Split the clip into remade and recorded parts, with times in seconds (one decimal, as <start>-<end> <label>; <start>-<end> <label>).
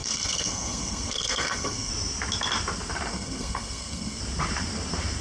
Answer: 0.0-1.9 remade; 1.9-3.1 recorded; 3.1-4.2 remade; 4.2-5.2 recorded